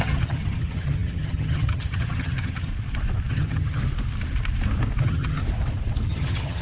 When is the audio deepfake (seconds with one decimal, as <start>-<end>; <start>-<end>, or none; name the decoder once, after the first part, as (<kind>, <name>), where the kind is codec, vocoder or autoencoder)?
0.0-2.7 (vocoder, HiFi-GAN); 3.3-3.8; 5.0-5.4; 6.1-6.6